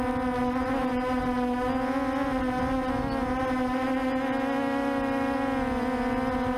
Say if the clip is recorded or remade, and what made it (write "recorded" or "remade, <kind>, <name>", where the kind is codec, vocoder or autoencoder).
recorded